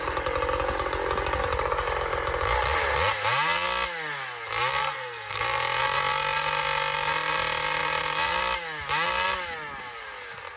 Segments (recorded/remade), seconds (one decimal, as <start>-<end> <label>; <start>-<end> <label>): 0.0-4.8 recorded; 4.8-5.4 remade; 5.4-10.6 recorded